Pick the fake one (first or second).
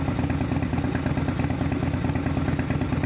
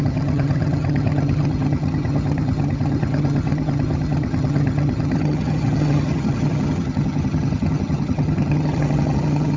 second